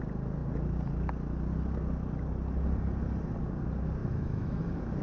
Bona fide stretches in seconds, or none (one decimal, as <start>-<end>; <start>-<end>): 0.0-4.0; 4.6-5.0